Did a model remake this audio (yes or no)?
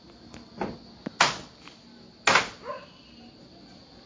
no